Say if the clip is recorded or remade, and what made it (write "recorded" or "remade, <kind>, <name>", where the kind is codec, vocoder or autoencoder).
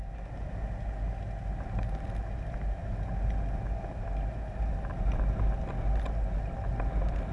recorded